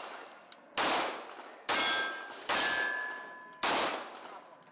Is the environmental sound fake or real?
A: real